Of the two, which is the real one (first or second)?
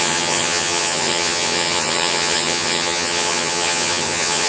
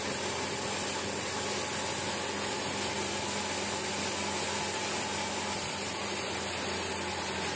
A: second